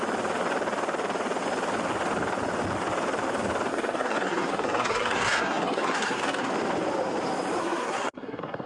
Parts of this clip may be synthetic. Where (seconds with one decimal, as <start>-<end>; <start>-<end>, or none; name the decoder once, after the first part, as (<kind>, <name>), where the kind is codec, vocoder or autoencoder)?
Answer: 3.7-6.5 (codec, SNAC); 7.6-8.7